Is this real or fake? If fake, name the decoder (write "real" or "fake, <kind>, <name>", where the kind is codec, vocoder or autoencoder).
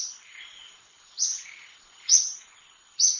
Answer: fake, vocoder, Vocos